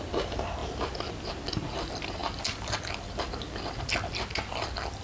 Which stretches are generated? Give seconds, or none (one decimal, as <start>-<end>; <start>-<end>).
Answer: none